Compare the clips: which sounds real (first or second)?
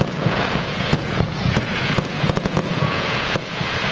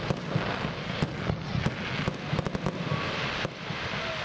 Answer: second